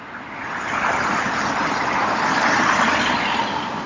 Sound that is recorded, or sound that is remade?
recorded